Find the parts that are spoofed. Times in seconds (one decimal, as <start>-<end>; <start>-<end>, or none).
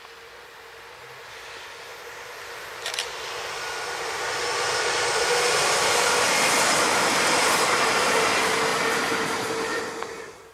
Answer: 8.7-9.8